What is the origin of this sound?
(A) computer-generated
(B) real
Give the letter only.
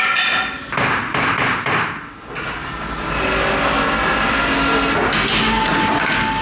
B